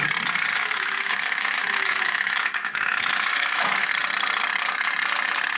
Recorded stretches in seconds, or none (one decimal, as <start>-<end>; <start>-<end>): 0.0-0.5; 3.9-5.6